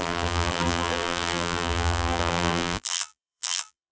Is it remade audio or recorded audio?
remade